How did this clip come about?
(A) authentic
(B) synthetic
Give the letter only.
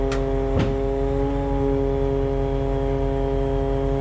A